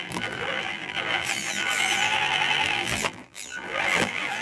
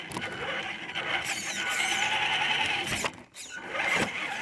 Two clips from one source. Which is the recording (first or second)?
second